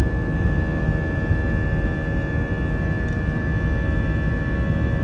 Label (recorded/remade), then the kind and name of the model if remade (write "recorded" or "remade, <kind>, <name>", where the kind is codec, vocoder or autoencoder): recorded